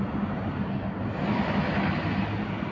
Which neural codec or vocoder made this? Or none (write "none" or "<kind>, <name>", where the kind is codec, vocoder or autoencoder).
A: none